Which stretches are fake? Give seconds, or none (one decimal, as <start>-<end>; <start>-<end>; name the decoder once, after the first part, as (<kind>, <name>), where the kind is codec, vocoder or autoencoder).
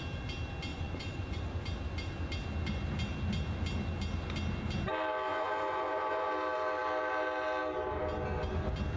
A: 0.7-1.4 (vocoder, Vocos); 5.3-6.3